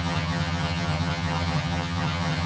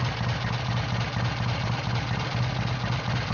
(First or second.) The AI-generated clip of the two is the first